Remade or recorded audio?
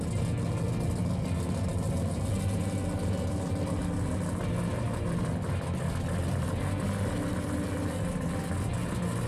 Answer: recorded